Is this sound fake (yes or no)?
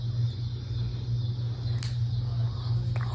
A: no